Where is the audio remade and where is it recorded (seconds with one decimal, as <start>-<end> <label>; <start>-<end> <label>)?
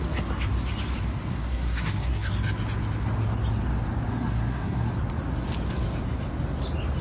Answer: 0.0-1.3 recorded; 1.3-2.3 remade; 2.3-4.1 recorded; 4.1-4.9 remade; 4.9-7.0 recorded